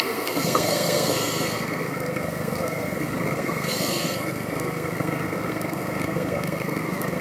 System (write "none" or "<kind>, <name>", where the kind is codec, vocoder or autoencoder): codec, SNAC